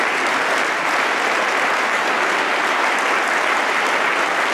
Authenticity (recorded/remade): recorded